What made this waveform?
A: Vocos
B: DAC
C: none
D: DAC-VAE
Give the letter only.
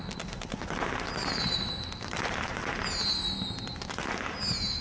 C